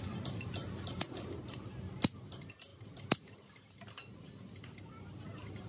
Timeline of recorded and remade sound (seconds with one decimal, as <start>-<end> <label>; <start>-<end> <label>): 0.0-5.7 recorded